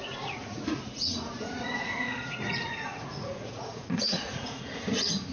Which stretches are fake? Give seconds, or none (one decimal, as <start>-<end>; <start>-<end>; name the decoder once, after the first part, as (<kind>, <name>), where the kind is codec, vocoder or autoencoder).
0.0-5.3 (vocoder, Vocos)